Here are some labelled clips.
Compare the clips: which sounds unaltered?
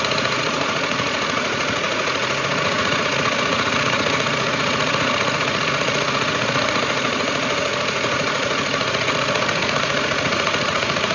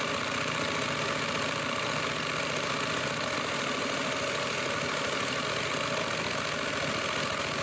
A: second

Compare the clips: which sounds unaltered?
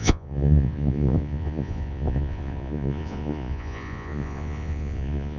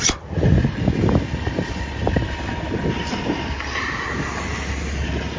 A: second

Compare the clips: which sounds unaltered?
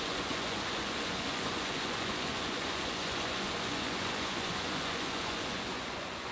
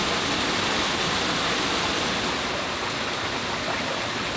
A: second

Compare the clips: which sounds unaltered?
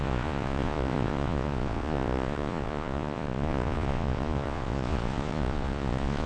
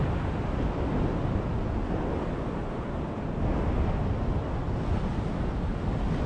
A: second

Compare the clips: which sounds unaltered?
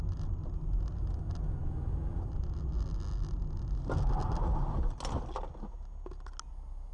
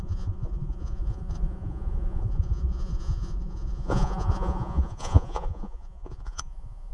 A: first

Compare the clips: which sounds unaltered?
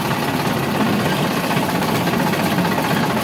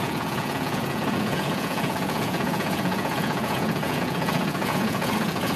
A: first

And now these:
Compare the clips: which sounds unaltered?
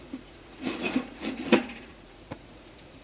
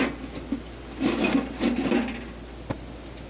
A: second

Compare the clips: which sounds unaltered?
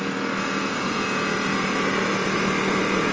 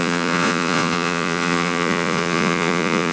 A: first